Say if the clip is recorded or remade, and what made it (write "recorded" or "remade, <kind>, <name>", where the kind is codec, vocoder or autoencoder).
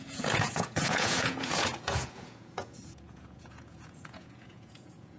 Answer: remade, vocoder, Vocos